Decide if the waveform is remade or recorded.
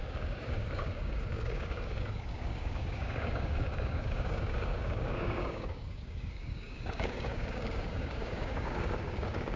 remade